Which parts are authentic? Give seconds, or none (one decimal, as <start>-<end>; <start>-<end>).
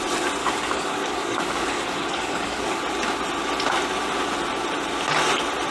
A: 0.0-0.4; 2.8-5.7